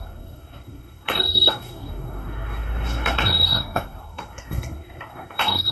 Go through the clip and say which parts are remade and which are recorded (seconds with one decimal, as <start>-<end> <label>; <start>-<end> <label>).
0.0-5.7 remade